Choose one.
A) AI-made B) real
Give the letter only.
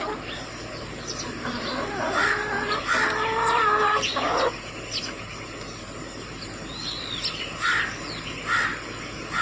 B